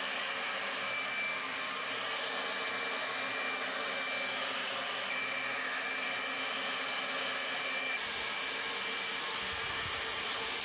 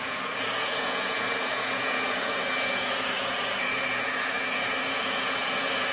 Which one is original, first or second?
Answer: first